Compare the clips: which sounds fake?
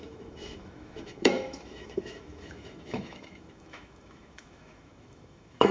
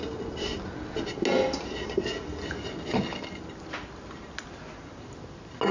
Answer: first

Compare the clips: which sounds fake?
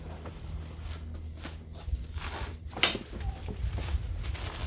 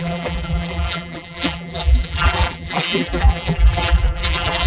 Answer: second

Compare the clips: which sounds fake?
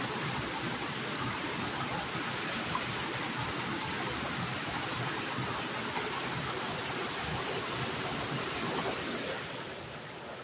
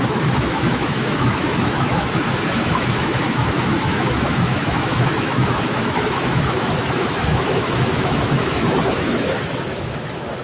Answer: second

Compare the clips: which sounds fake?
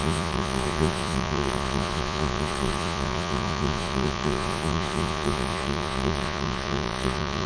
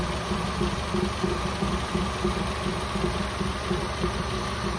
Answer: first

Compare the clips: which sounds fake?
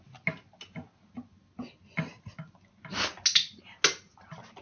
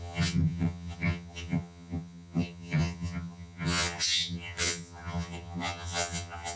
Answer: second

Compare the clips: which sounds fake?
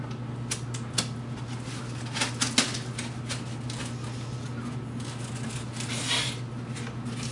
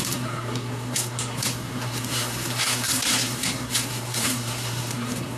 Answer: second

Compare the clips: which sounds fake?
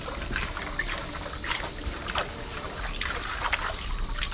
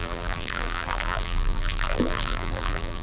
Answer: second